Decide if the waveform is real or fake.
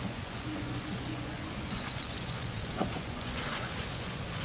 fake